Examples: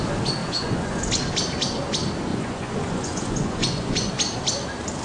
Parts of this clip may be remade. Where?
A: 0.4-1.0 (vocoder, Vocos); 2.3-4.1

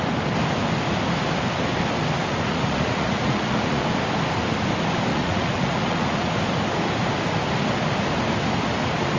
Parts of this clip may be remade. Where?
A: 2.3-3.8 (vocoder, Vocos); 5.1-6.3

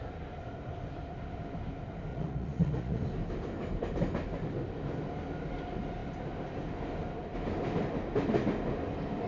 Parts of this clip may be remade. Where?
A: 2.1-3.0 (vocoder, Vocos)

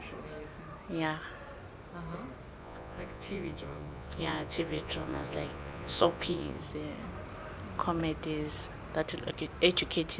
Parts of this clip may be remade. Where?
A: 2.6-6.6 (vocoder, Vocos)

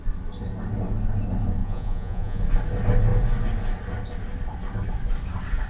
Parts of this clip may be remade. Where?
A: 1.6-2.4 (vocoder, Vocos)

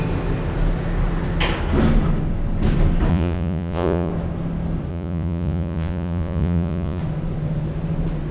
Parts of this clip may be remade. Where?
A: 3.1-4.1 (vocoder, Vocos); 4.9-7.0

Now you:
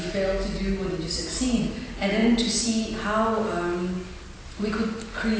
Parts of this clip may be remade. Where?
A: none

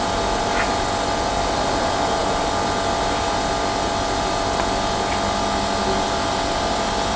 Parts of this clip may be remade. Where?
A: none